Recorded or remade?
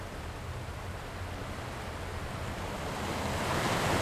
recorded